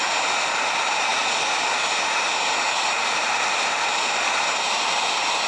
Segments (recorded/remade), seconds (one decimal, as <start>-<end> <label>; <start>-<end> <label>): 0.0-5.5 recorded